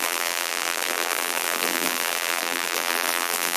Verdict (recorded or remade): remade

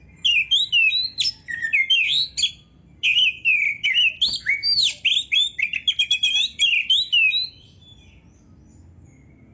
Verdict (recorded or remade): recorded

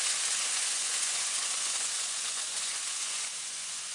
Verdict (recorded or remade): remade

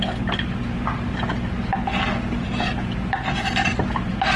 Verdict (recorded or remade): recorded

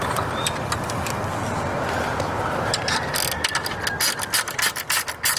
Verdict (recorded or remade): recorded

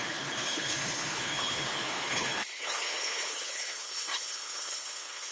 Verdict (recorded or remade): remade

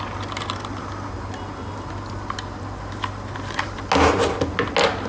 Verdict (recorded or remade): recorded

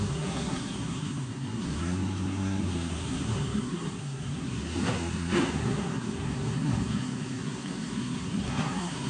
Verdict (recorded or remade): remade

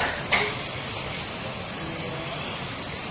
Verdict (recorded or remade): remade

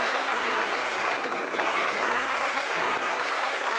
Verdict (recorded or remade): remade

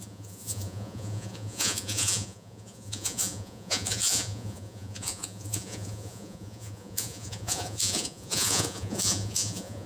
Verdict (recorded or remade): remade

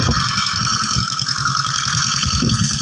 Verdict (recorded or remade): remade